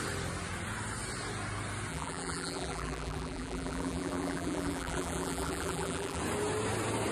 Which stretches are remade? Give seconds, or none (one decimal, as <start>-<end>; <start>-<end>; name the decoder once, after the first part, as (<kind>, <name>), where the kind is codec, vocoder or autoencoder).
1.9-6.2 (vocoder, BigVGAN v2)